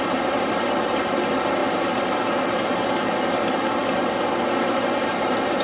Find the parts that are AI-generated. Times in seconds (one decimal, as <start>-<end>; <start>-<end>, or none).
none